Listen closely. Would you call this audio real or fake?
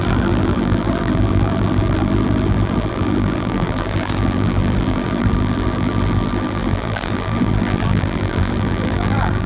fake